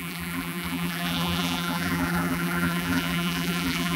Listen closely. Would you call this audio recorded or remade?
remade